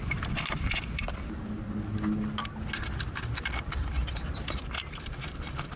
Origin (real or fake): real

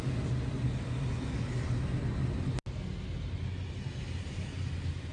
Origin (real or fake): real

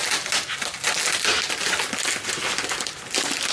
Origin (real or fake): real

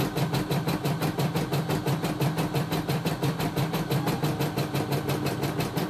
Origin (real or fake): real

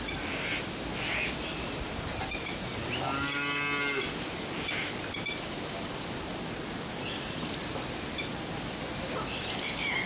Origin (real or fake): real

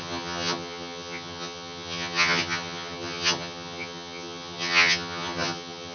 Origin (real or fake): fake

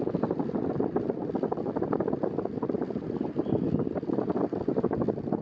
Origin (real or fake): real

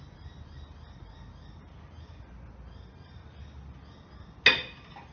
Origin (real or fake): real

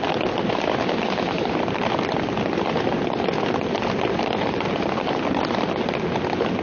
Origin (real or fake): real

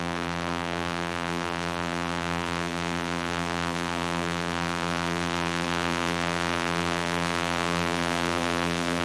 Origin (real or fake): fake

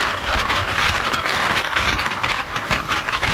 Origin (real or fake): fake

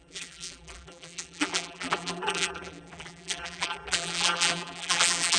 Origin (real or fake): fake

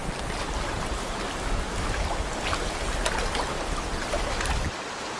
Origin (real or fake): real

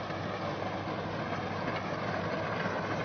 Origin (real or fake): real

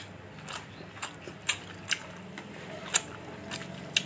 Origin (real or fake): real